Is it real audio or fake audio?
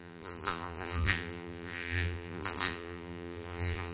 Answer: fake